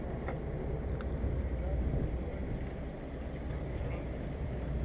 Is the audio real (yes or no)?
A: yes